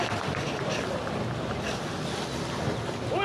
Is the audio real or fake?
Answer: real